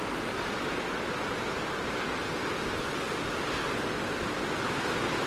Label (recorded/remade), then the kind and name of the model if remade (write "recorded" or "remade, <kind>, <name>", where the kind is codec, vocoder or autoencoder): recorded